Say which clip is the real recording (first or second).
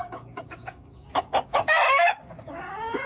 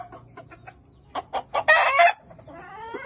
second